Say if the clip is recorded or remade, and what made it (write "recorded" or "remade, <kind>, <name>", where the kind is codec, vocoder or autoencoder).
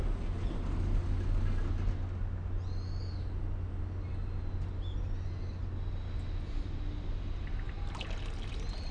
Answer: recorded